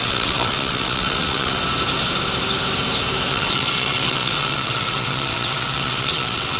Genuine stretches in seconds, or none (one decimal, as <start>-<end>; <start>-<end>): 1.6-3.3